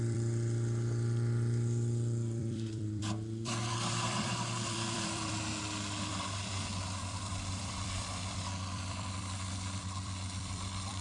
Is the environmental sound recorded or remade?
remade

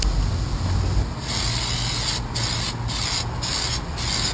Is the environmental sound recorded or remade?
recorded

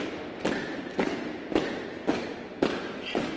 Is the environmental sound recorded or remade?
recorded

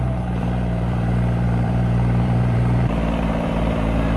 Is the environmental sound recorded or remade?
remade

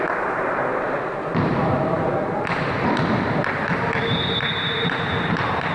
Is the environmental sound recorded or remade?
recorded